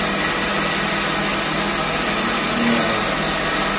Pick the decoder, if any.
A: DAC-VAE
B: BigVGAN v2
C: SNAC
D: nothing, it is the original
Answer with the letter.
D